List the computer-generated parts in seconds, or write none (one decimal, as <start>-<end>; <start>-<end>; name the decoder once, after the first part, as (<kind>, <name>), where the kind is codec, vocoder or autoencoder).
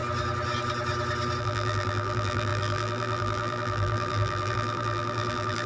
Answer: 1.4-5.7 (vocoder, BigVGAN v2)